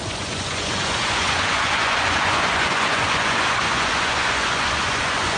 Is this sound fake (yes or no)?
yes